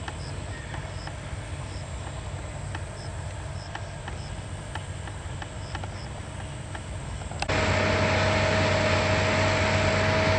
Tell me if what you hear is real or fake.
real